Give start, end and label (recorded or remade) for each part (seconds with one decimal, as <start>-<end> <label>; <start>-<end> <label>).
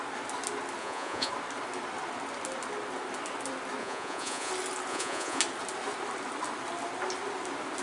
0.0-0.8 recorded; 0.8-1.3 remade; 1.3-3.8 recorded; 3.8-4.5 remade; 4.5-4.9 recorded; 4.9-5.4 remade; 5.4-7.8 recorded